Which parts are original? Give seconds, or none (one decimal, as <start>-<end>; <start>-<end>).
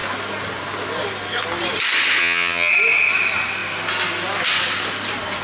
0.0-2.2; 2.7-5.4